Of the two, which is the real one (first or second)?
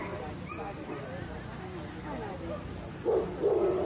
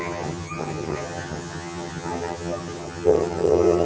first